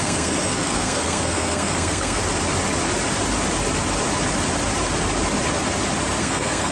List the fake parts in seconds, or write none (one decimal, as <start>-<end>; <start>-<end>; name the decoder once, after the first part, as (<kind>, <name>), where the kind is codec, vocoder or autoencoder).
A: 0.0-2.2 (codec, SNAC); 6.2-6.7